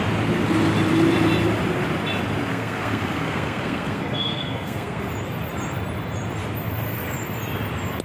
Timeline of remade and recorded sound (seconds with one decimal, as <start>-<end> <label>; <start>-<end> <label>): 0.0-2.5 recorded; 2.5-5.1 remade; 5.1-8.0 recorded